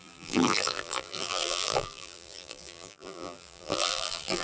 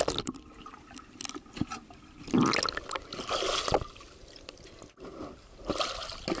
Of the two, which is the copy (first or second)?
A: first